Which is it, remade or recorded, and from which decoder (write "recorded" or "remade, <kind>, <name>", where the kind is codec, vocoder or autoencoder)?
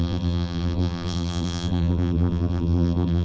remade, vocoder, BigVGAN v2